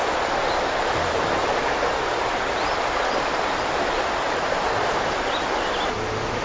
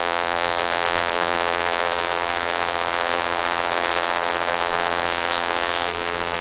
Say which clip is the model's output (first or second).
second